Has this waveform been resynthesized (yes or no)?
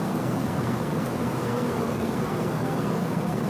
yes